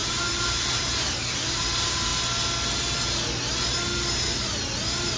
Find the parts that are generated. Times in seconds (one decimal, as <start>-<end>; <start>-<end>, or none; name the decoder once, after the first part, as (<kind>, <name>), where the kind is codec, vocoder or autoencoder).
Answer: 0.0-2.1 (vocoder, BigVGAN v2); 4.2-5.2